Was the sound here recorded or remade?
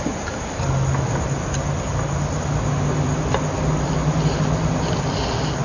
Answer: recorded